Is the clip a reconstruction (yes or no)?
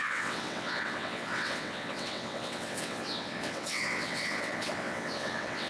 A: yes